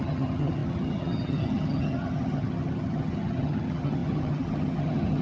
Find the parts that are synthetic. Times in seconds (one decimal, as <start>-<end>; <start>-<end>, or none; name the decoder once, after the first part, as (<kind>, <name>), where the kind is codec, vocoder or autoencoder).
0.0-5.2 (vocoder, HiFi-GAN)